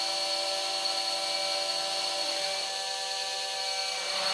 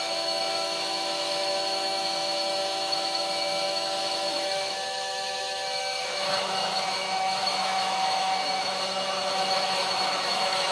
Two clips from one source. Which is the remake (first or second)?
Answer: second